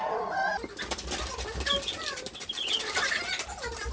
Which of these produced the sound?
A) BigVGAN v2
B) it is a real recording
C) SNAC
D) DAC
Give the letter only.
B